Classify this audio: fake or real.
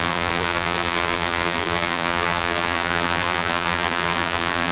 fake